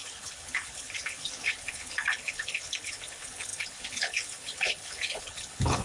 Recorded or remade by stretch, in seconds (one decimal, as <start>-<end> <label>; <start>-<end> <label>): 0.0-5.8 remade